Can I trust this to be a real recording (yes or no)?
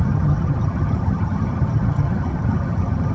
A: no